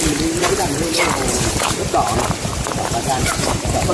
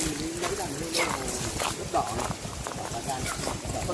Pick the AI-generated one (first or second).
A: first